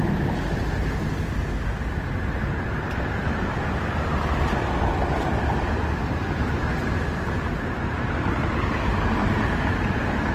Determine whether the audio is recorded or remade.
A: recorded